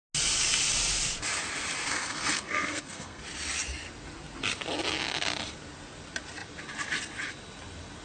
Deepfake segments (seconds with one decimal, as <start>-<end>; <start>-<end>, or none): 1.9-3.2